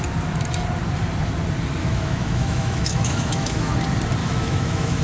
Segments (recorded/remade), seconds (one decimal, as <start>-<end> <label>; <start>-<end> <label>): 0.0-1.8 recorded; 1.8-3.7 remade; 3.7-4.2 recorded; 4.2-5.0 remade